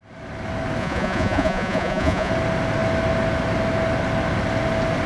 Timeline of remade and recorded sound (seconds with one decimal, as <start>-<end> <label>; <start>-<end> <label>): 0.0-0.8 recorded; 0.8-2.3 remade; 2.3-5.1 recorded

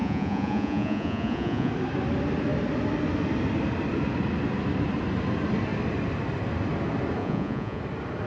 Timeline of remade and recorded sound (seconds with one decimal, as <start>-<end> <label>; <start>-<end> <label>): 0.0-1.7 remade; 1.7-7.2 recorded; 7.2-7.8 remade; 7.8-8.3 recorded

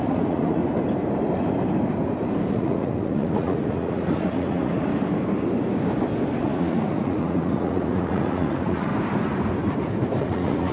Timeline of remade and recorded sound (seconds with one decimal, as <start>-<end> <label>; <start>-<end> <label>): 0.0-0.6 remade; 0.6-2.5 recorded; 2.5-4.9 remade; 4.9-6.4 recorded; 6.4-8.9 remade; 8.9-10.2 recorded; 10.2-10.7 remade

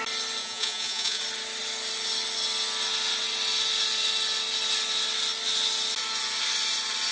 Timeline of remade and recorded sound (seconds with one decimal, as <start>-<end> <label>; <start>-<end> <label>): 0.0-0.4 recorded; 0.4-1.2 remade; 1.2-7.1 recorded

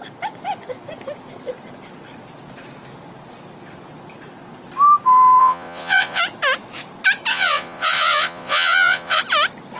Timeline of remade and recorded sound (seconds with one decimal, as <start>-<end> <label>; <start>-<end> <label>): 0.0-5.4 recorded; 5.4-6.2 remade; 6.2-7.3 recorded; 7.3-9.2 remade; 9.2-9.8 recorded

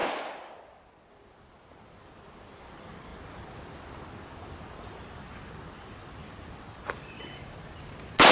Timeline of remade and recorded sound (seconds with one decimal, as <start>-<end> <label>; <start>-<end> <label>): 0.0-8.3 recorded

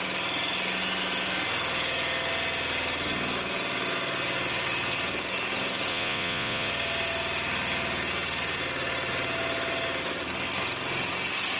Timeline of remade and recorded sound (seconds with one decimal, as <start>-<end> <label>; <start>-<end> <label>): 0.0-5.9 recorded; 5.9-6.7 remade; 6.7-11.6 recorded

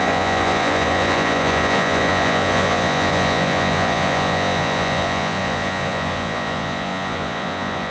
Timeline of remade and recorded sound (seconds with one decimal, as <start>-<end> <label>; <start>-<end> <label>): 0.0-7.9 remade